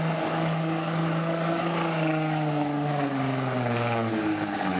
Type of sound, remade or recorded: remade